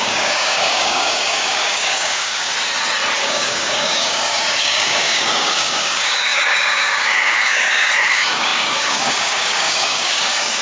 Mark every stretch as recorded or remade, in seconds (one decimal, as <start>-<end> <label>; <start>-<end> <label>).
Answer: 0.0-2.5 remade; 2.5-3.2 recorded; 3.2-10.6 remade